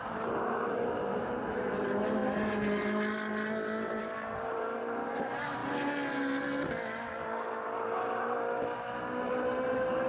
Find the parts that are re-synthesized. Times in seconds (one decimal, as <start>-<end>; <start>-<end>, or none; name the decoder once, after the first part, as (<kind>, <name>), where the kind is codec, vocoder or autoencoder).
0.0-2.2 (vocoder, BigVGAN v2); 4.0-5.6; 9.3-10.1